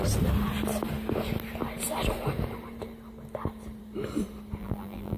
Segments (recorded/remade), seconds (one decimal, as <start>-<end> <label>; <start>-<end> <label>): 0.0-4.6 recorded; 4.6-5.2 remade